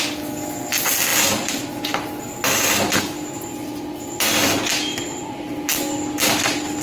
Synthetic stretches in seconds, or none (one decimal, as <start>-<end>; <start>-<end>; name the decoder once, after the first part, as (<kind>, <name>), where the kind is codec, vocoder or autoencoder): none